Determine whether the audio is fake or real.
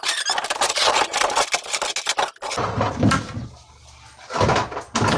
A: real